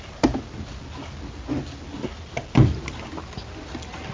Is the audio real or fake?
real